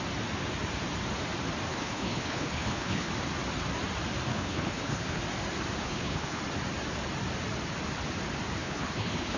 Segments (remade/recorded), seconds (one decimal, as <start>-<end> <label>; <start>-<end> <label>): 0.0-1.7 recorded; 1.7-3.1 remade; 3.1-4.3 recorded; 4.3-5.2 remade; 5.2-5.8 recorded; 5.8-6.4 remade; 6.4-8.6 recorded; 8.6-9.4 remade